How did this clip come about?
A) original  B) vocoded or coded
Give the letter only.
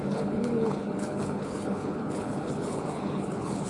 B